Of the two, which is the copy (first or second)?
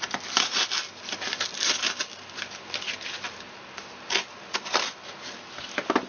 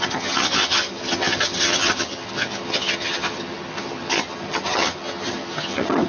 second